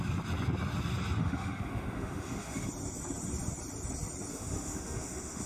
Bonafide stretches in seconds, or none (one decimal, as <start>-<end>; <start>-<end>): 0.0-1.2; 2.7-4.3